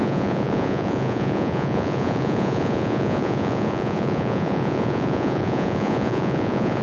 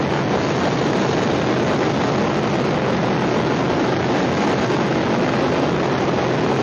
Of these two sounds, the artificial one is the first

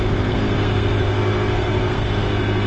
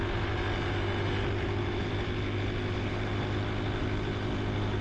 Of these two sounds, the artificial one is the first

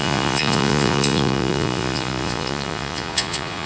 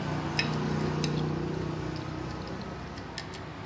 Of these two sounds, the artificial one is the first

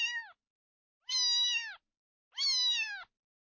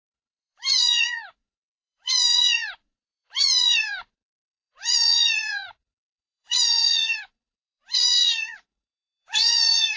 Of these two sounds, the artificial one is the second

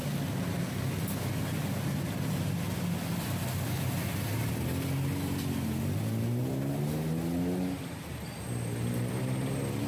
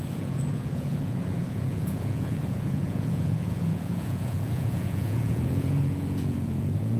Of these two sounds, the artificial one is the second